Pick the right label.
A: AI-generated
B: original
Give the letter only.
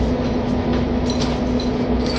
B